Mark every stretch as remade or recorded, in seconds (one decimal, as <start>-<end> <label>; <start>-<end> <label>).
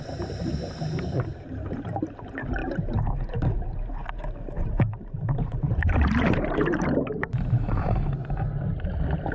0.0-8.2 remade; 8.2-9.3 recorded